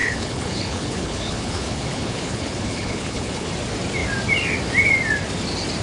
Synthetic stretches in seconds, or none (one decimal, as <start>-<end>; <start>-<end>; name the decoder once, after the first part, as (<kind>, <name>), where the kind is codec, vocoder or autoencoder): 0.0-3.5 (codec, HILCodec)